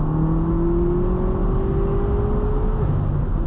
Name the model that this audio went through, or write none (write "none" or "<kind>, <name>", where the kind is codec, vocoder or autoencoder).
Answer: none